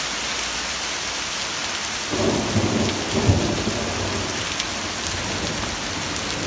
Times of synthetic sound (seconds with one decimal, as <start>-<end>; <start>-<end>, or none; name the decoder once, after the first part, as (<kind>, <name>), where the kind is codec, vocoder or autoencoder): none